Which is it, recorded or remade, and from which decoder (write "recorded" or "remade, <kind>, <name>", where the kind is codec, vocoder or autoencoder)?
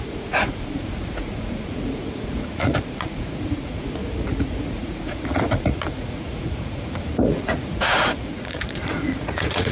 remade, vocoder, Vocos